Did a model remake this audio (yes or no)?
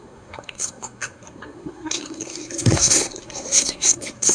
yes